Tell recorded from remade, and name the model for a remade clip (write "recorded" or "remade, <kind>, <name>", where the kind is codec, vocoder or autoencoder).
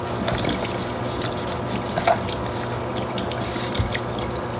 recorded